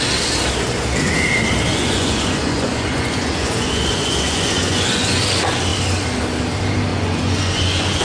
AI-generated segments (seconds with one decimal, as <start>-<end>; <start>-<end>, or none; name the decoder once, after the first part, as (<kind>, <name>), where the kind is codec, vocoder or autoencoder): 1.7-5.2 (vocoder, Vocos); 6.9-8.0